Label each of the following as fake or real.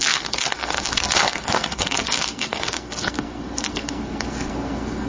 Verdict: fake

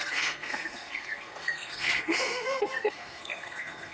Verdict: fake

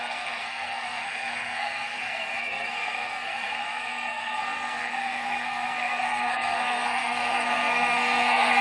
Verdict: fake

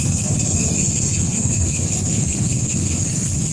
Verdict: fake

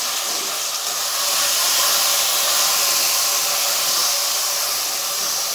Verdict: real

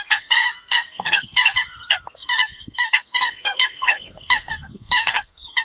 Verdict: fake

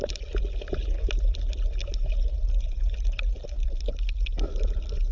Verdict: real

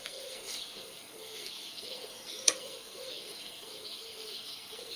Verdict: fake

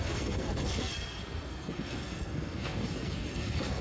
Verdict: fake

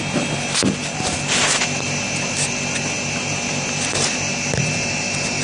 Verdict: real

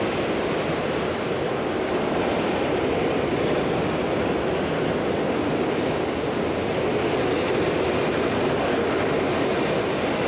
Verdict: real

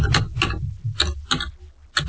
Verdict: real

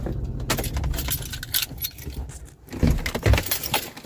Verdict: real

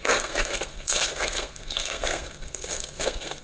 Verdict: fake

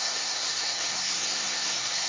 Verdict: fake